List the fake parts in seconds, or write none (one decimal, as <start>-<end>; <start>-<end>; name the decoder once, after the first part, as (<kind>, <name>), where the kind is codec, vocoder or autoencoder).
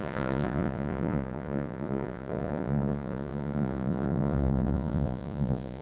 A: 0.0-5.8 (vocoder, Vocos)